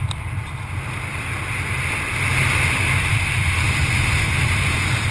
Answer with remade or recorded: recorded